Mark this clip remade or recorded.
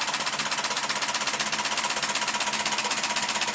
recorded